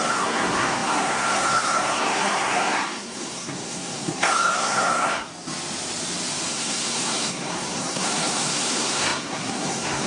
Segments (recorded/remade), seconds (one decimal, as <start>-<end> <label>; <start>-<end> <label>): 0.0-5.3 remade; 5.3-6.5 recorded; 6.5-10.1 remade